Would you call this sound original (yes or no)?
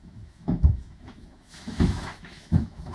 no